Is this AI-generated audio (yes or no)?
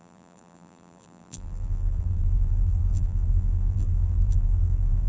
yes